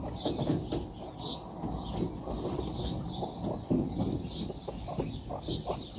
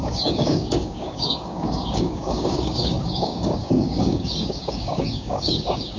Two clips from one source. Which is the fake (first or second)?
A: second